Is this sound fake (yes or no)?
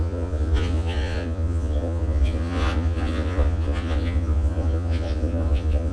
yes